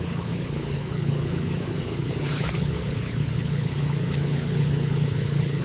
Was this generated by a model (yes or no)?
yes